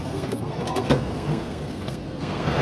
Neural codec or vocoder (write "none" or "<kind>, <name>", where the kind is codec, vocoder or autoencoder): codec, SNAC